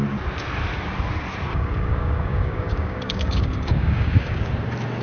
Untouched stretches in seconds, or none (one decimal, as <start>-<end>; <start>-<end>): 0.0-1.5; 4.4-5.0